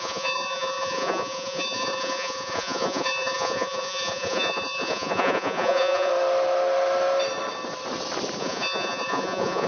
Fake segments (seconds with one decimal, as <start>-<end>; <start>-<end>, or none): 0.0-6.1; 8.4-9.7

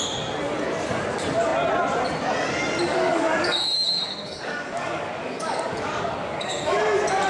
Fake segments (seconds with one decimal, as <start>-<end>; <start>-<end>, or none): 2.8-6.6